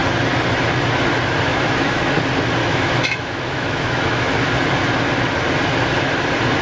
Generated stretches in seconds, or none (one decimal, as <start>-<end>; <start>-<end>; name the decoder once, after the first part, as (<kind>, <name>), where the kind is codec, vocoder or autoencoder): 1.5-2.1 (autoencoder, DAC-VAE); 2.6-4.3